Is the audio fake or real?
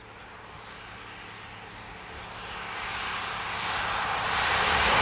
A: real